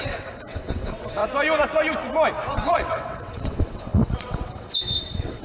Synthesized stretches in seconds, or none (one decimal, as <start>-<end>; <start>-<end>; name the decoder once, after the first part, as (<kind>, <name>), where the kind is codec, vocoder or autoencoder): 0.0-1.2 (vocoder, WaveNeXt); 2.5-5.4